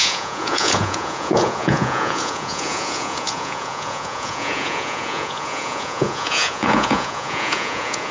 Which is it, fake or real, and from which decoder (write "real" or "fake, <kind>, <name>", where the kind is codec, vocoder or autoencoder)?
fake, vocoder, Vocos